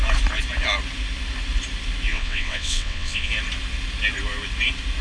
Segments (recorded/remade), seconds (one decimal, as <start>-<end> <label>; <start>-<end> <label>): 0.0-2.1 recorded; 2.1-3.3 remade; 3.3-5.0 recorded